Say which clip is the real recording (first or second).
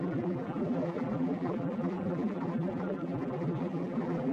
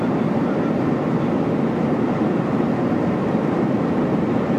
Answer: second